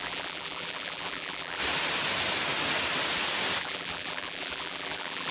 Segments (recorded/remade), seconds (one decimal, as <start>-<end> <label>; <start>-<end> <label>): 0.0-1.6 remade; 1.6-3.6 recorded; 3.6-5.3 remade